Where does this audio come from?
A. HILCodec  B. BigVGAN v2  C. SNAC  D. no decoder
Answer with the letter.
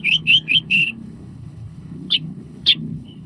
A